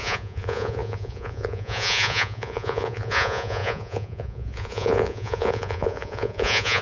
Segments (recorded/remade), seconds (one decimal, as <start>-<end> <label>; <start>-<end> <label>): 0.0-6.8 remade